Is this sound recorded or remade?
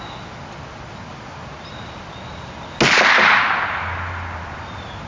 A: recorded